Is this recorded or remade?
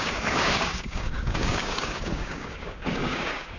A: remade